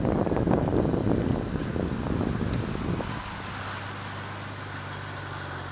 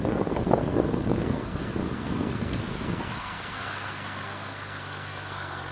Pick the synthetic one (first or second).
second